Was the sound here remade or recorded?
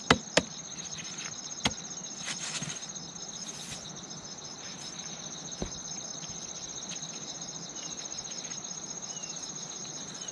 recorded